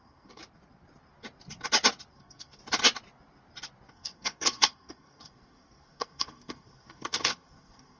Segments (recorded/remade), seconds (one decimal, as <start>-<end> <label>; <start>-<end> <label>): 0.0-0.4 remade; 0.4-2.1 recorded; 2.1-2.6 remade; 2.6-3.9 recorded; 3.9-8.0 remade